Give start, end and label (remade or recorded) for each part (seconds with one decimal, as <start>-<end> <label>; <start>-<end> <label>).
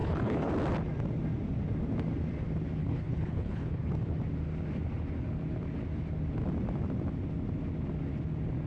0.0-0.5 remade; 0.5-2.8 recorded; 2.8-3.9 remade; 3.9-8.7 recorded